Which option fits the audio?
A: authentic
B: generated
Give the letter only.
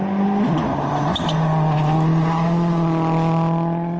A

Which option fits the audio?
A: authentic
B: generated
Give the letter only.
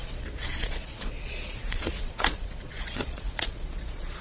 B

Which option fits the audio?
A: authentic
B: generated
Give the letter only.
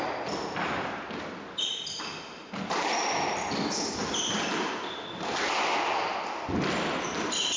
A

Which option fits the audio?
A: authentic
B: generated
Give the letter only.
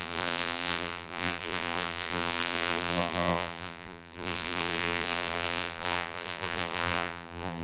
B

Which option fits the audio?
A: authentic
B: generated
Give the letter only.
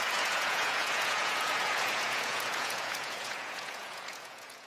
B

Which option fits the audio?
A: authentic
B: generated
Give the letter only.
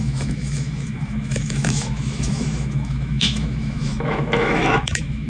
B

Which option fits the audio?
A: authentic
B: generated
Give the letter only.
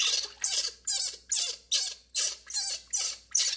A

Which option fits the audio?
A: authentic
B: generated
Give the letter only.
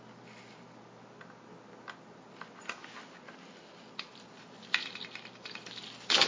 A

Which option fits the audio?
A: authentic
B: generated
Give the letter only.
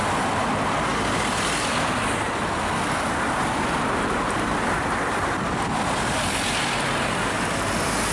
A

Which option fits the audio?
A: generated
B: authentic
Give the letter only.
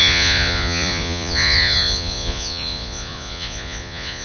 A